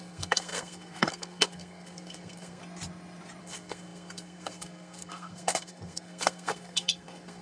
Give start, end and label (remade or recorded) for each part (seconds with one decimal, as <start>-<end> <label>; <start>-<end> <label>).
0.0-2.6 remade; 2.6-3.4 recorded; 3.4-7.4 remade